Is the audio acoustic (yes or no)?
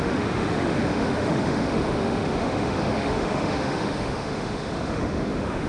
no